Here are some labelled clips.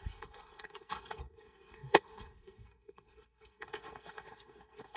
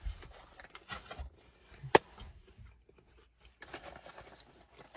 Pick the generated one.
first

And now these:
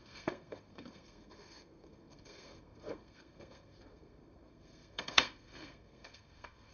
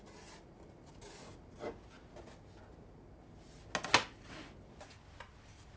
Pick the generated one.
first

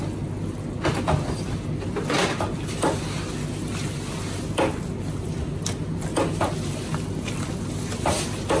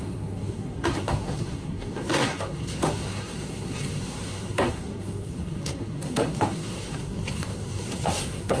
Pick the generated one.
second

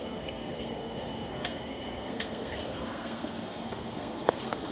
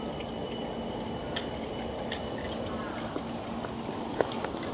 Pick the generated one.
first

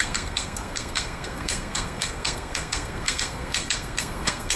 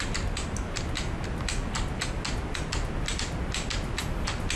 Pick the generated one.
first